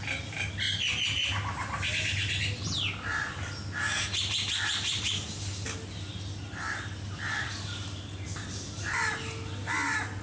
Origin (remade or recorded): recorded